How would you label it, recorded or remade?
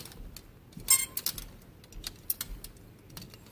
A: recorded